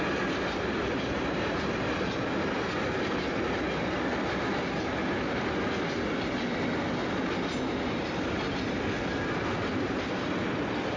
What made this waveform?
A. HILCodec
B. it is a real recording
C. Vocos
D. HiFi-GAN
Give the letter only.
B